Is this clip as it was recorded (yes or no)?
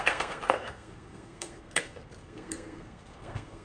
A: no